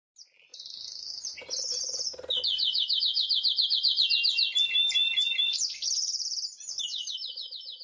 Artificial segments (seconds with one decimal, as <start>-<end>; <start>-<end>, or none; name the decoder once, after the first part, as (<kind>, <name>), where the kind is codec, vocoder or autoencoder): none